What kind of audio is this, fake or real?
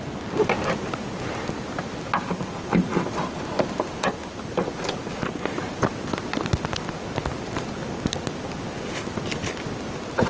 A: real